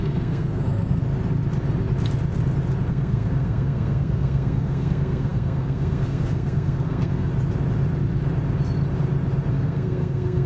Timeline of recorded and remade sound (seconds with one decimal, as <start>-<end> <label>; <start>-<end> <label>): 0.0-1.0 remade; 1.0-2.9 recorded; 2.9-7.3 remade; 7.3-9.5 recorded; 9.5-10.5 remade